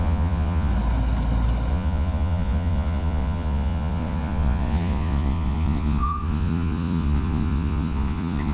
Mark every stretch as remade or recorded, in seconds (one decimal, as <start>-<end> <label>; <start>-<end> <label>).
0.0-0.7 remade; 0.7-1.7 recorded; 1.7-8.5 remade